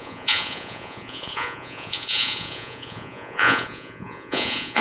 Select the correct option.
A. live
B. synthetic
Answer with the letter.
B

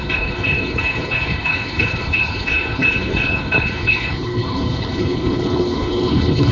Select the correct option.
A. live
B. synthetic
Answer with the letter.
B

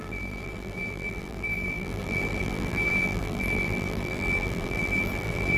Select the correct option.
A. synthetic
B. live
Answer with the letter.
A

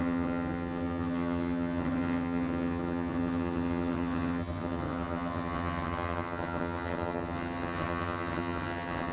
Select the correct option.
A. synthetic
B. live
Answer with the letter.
A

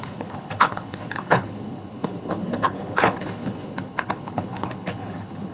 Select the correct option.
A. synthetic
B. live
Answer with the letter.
A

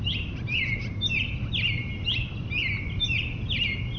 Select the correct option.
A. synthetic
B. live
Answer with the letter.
B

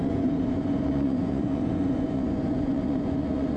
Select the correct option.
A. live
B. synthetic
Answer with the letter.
B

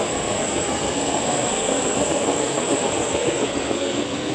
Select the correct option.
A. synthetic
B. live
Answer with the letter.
A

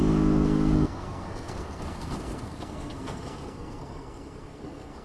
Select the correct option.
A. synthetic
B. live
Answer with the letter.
A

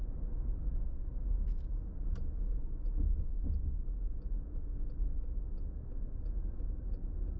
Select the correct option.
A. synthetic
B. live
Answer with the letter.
B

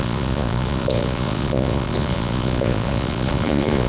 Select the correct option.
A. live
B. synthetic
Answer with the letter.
B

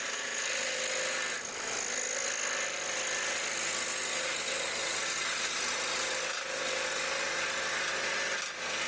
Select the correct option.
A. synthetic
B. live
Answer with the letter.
B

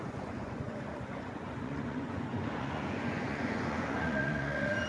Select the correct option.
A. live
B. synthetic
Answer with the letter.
B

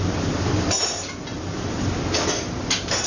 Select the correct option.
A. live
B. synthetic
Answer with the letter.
A